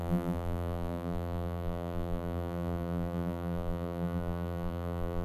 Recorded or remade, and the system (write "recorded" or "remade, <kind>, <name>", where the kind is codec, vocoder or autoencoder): remade, vocoder, BigVGAN v2